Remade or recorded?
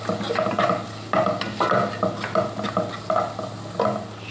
recorded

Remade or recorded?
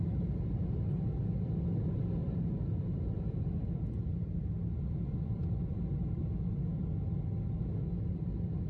recorded